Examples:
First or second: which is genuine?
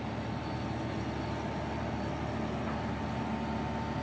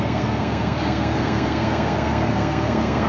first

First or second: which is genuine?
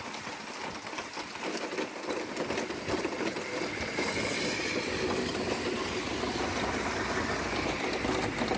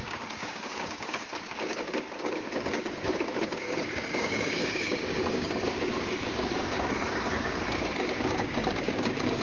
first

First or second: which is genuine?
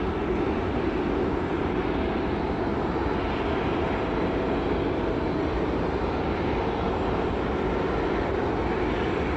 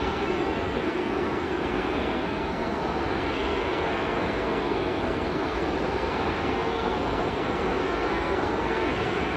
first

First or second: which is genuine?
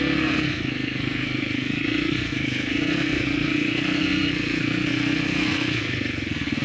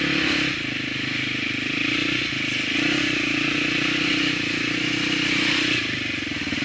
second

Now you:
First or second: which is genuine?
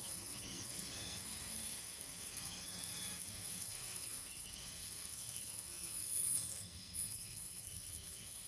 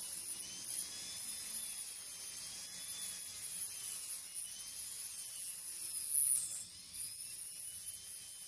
second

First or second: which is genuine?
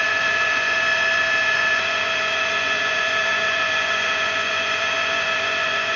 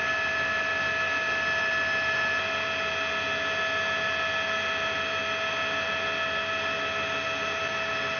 second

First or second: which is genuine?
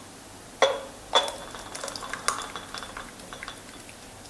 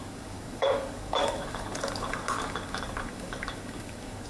first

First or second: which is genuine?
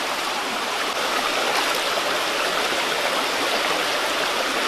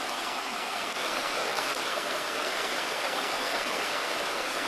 first